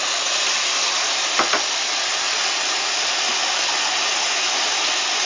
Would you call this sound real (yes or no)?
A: yes